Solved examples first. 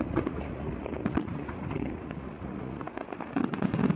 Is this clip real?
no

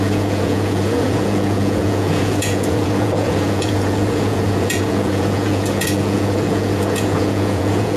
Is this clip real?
no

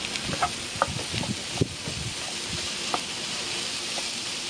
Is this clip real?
yes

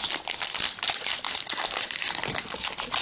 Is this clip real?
yes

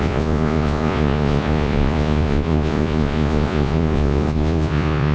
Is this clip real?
no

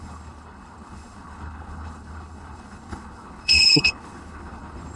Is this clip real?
no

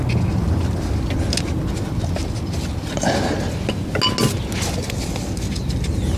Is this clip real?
yes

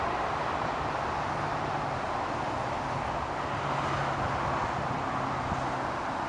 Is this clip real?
yes